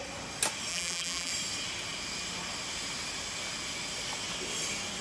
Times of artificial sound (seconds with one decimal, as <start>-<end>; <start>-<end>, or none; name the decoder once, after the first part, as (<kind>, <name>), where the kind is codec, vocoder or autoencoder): 0.7-1.3 (vocoder, BigVGAN v2)